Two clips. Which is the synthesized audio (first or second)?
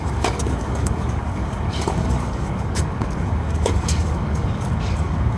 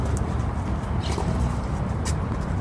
first